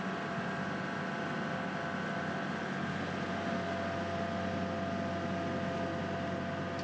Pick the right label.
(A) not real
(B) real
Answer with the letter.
B